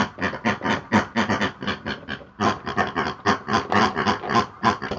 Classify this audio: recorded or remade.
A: recorded